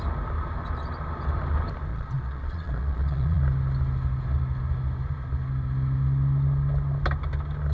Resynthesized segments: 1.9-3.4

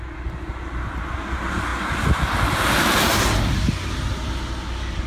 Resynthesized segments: none

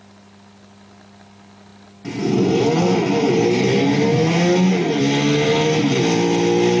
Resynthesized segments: none

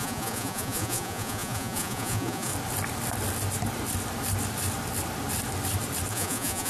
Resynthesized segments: 0.0-2.5; 6.1-6.7